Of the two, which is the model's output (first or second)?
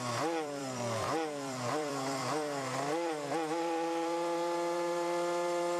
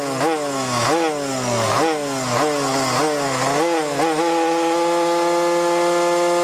first